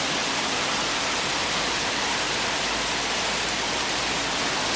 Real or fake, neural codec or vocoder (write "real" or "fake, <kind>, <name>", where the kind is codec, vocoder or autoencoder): real